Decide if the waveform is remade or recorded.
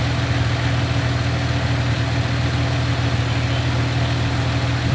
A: recorded